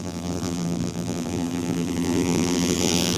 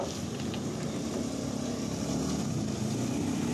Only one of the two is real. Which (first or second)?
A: second